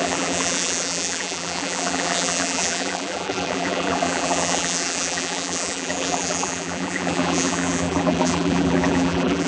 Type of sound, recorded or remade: remade